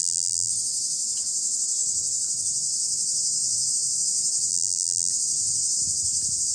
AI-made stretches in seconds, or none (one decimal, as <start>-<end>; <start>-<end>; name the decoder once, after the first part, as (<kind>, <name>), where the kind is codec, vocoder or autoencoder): 0.0-0.5 (vocoder, BigVGAN v2); 4.5-5.1